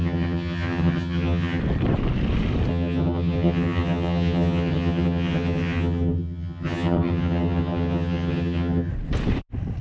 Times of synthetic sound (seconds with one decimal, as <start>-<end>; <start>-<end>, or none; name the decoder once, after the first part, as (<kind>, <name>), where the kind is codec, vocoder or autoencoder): 0.0-1.6 (vocoder, HiFi-GAN); 2.7-8.9